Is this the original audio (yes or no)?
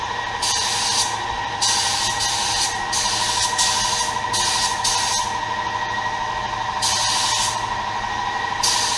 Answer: yes